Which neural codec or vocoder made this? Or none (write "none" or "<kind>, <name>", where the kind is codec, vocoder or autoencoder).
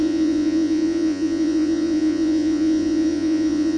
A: vocoder, Vocos